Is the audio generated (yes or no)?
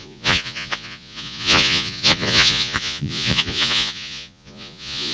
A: yes